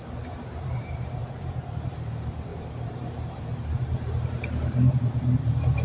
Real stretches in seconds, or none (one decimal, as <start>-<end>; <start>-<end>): 1.2-1.8